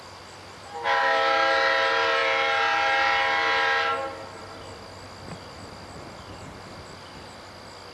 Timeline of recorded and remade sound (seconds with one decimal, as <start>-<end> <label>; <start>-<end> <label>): 0.0-7.9 recorded